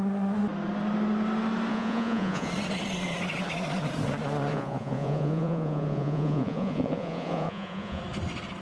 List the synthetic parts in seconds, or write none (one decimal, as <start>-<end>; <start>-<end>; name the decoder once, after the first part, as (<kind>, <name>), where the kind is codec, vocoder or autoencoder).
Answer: 1.7-2.5 (vocoder, Vocos); 4.5-8.0